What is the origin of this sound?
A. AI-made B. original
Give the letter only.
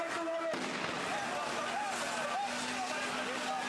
B